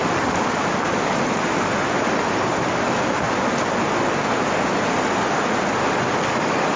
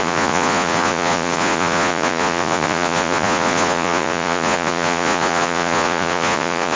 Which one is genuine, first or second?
first